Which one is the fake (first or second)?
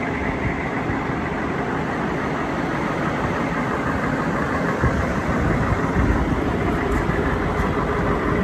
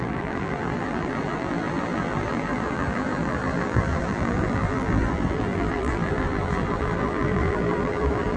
second